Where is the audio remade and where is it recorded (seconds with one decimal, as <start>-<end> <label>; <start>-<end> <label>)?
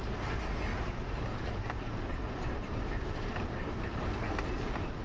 0.0-0.7 recorded; 0.7-3.7 remade; 3.7-5.0 recorded